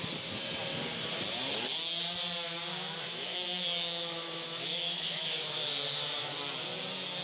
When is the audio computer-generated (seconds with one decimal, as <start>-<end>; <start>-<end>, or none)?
2.7-6.3